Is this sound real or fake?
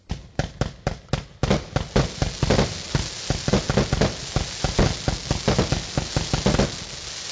real